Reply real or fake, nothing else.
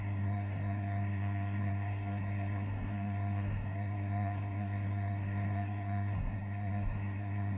fake